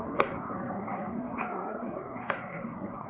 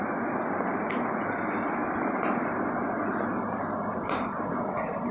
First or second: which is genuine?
second